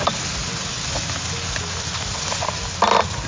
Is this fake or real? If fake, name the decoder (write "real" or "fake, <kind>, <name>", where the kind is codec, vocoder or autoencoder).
real